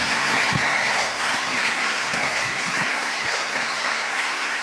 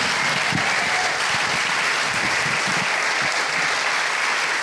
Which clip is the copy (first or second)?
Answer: first